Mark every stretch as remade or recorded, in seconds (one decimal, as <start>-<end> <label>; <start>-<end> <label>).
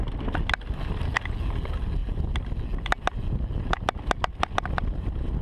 0.0-5.4 recorded